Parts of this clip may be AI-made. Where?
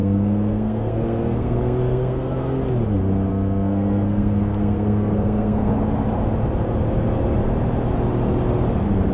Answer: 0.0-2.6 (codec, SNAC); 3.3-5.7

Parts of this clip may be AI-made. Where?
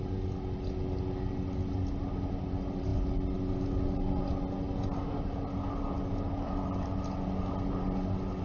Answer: none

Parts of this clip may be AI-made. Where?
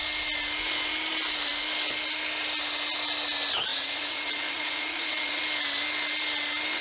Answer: 3.7-5.4 (vocoder, Vocos)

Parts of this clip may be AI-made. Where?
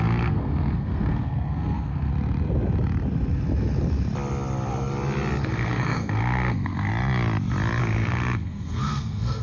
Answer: 0.0-2.1 (codec, SNAC); 5.4-6.9; 7.8-9.4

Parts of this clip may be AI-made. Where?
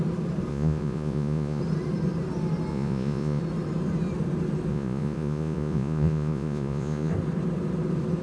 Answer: 0.5-1.6 (vocoder, Vocos); 2.7-3.4; 4.7-7.1